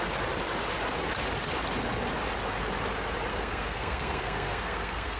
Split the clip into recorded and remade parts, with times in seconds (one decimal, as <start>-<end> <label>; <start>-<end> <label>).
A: 0.0-3.3 recorded; 3.3-5.2 remade